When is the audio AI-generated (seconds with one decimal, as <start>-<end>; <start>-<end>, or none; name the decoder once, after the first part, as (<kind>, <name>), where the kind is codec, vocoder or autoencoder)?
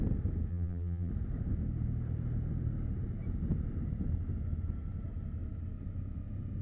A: 0.5-1.1 (vocoder, BigVGAN v2)